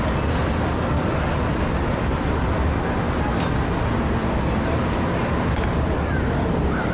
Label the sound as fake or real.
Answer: real